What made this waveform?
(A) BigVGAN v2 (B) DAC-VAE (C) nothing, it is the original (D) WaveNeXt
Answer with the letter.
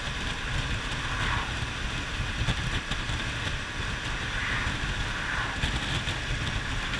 C